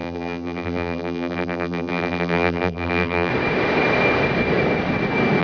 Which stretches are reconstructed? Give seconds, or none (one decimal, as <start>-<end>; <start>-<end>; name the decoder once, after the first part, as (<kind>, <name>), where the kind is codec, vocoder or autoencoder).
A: 0.0-3.3 (vocoder, BigVGAN v2)